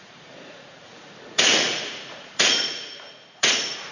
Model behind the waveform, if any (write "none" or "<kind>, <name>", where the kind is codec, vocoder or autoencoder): vocoder, Vocos